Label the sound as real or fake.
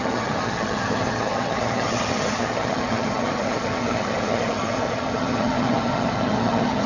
fake